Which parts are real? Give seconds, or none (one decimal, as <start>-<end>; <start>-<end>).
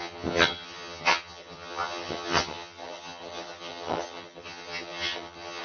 none